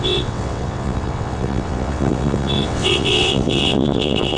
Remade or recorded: remade